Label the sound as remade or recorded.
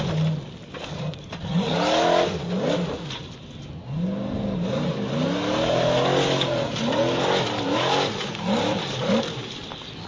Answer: recorded